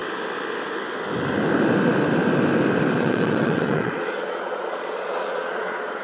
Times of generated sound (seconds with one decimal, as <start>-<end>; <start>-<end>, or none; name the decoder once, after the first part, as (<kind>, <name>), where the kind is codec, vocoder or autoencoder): 3.0-6.0 (vocoder, Vocos)